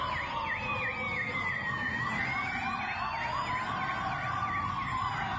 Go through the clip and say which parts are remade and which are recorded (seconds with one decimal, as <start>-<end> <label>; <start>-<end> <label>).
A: 0.0-5.4 recorded